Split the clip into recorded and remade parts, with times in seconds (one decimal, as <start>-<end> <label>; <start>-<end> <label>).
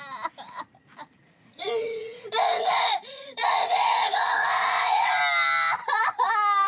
0.0-1.2 recorded; 1.2-5.2 remade; 5.2-5.8 recorded; 5.8-6.3 remade; 6.3-6.7 recorded